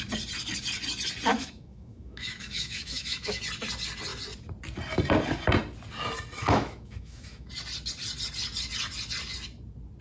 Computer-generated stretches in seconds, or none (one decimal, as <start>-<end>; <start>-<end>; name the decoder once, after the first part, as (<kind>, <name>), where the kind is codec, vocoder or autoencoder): 1.3-3.4 (autoencoder, DAC-VAE); 6.4-7.5